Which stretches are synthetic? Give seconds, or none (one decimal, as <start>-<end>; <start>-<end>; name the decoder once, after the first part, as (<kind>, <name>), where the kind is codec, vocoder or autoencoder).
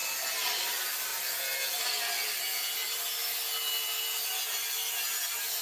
none